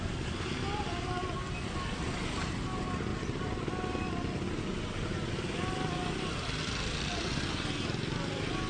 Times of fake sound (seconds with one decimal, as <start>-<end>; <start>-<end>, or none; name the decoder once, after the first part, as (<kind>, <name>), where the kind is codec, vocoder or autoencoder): none